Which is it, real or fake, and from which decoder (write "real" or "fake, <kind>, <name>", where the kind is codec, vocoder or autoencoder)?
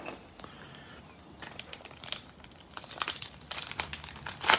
fake, vocoder, BigVGAN v2